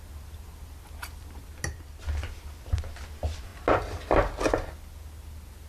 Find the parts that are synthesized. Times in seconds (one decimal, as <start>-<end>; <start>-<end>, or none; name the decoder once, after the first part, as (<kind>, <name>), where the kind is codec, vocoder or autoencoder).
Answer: none